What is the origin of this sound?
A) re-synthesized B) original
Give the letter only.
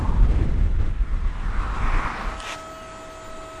B